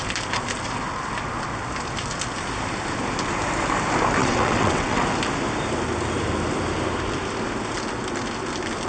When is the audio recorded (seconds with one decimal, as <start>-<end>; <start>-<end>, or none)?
0.0-4.2; 5.0-8.9